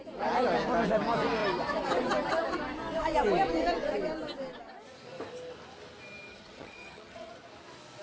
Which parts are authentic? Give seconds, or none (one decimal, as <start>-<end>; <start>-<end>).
0.0-6.3; 7.3-8.0